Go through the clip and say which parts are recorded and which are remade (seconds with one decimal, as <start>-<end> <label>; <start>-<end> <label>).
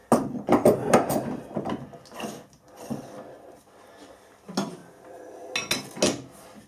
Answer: 0.0-6.7 recorded